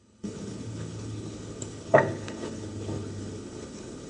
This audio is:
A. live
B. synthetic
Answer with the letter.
B